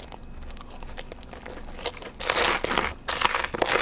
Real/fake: real